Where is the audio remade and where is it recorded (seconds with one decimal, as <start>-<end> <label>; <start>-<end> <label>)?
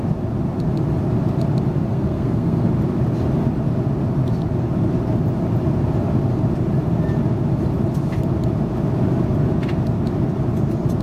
0.0-1.9 recorded; 1.9-2.7 remade; 2.7-11.0 recorded